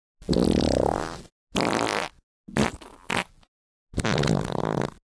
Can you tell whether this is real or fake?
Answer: real